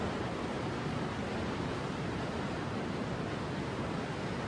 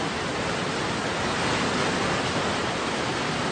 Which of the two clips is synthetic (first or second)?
first